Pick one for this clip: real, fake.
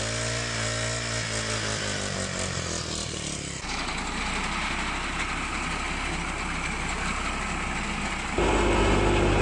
real